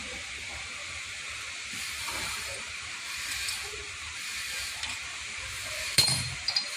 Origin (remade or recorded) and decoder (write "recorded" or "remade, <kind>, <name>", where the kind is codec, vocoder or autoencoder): remade, vocoder, BigVGAN v2